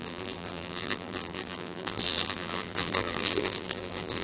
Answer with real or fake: fake